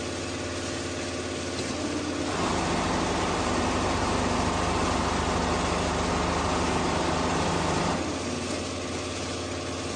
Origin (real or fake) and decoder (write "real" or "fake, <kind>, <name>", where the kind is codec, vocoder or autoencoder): real